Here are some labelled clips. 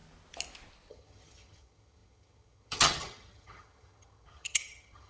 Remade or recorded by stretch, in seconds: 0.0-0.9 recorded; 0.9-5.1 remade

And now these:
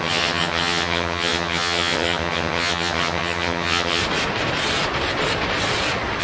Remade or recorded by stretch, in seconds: 0.0-4.0 remade; 4.0-6.2 recorded

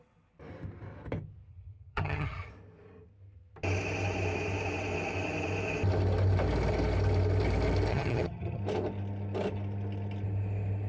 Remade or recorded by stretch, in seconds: 0.0-1.5 recorded; 1.5-2.5 remade; 2.5-7.9 recorded; 7.9-8.6 remade; 8.6-10.9 recorded

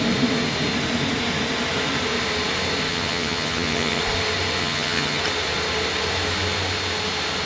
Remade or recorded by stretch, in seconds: 0.0-2.9 recorded; 2.9-4.0 remade; 4.0-4.6 recorded; 4.6-5.2 remade; 5.2-7.5 recorded